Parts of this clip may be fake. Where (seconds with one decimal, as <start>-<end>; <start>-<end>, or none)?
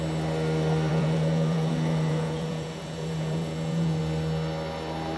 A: 0.9-4.0